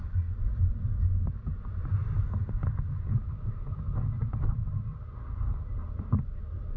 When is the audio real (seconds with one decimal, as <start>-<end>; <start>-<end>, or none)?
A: 2.0-3.3